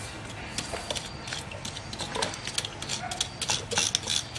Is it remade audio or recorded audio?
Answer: recorded